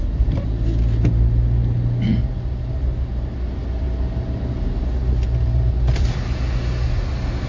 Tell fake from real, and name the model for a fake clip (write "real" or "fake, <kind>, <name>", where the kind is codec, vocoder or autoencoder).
real